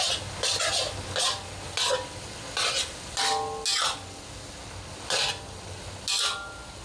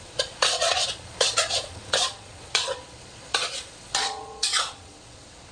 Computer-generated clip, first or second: second